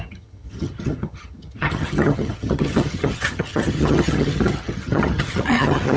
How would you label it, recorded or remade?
remade